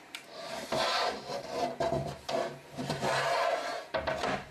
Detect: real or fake fake